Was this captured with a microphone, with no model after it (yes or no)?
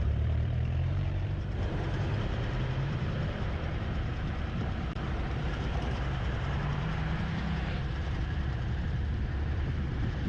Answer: no